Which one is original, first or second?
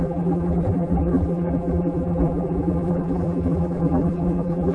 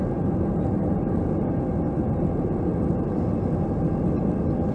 second